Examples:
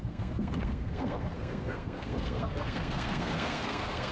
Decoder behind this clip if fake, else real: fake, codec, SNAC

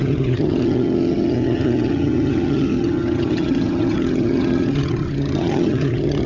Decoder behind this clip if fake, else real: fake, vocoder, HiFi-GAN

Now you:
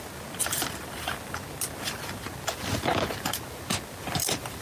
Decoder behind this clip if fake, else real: real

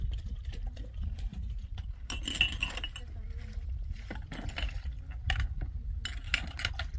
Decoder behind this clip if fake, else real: real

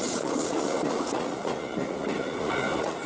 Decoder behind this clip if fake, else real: fake, vocoder, Vocos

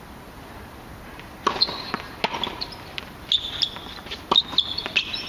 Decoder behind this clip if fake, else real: real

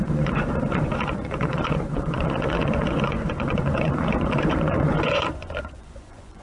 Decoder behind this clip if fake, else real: fake, vocoder, Vocos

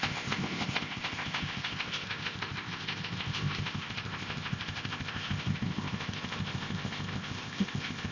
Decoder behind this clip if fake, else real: fake, codec, ZipCodec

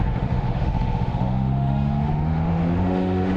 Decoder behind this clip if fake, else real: fake, autoencoder, DAC-VAE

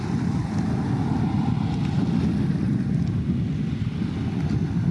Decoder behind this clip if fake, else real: real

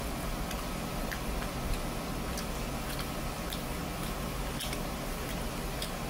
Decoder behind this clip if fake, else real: real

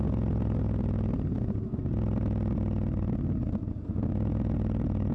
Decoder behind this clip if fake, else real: real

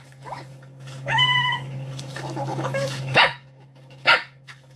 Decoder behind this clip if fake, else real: fake, codec, DAC